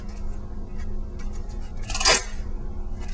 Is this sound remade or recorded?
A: recorded